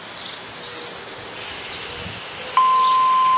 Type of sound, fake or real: real